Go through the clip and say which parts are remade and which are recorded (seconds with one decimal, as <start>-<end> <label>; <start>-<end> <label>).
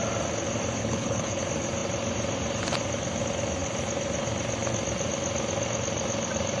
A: 0.0-0.8 recorded; 0.8-1.4 remade; 1.4-6.6 recorded